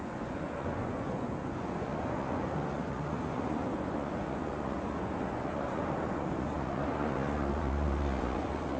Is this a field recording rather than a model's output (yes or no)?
no